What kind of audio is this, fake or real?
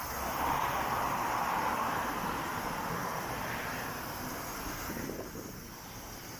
fake